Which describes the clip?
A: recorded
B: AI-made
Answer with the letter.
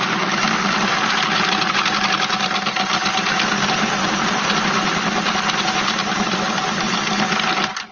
A